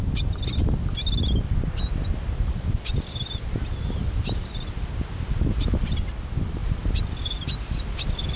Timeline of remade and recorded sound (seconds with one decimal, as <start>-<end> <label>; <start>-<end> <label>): 0.0-8.4 recorded